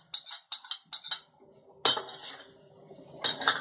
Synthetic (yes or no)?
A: no